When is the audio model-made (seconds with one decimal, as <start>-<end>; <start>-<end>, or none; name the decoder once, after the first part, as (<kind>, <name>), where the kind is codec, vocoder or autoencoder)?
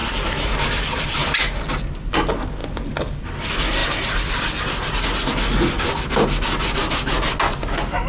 0.0-1.8 (vocoder, BigVGAN v2); 2.6-3.2; 3.8-5.0